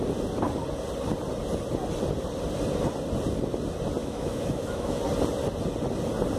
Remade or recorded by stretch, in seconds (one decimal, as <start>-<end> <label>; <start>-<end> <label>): 0.0-4.0 recorded; 4.0-5.0 remade; 5.0-6.4 recorded